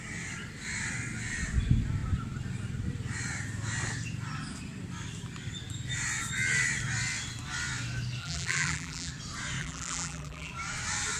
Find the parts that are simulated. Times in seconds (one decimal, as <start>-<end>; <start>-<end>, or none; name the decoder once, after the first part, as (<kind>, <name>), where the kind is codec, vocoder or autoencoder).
8.2-9.1 (vocoder, BigVGAN v2); 9.6-10.5